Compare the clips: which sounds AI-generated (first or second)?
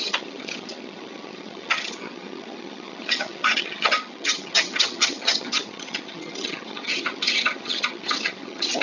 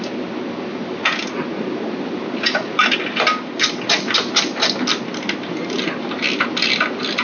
first